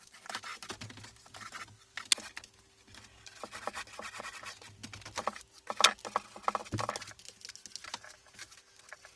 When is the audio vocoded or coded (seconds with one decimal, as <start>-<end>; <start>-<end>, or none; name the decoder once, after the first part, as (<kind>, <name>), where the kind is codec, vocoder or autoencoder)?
none